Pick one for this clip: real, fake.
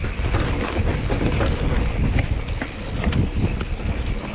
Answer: real